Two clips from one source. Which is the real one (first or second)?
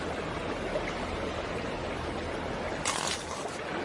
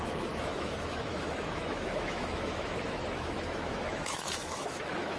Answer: first